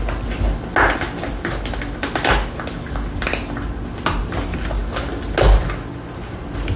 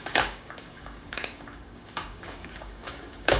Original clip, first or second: first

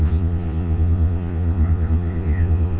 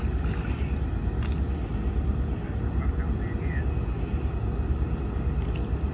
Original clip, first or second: second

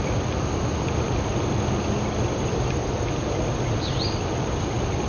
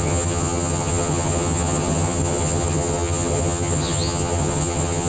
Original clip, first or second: first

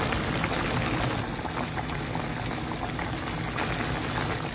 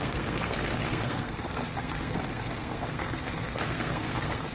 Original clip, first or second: first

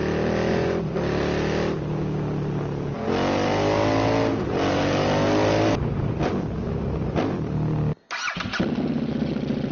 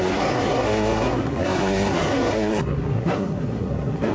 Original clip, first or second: first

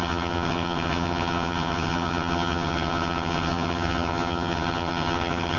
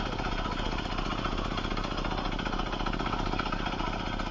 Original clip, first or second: second